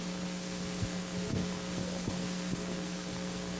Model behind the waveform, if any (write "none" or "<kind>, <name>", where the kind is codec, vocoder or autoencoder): codec, SNAC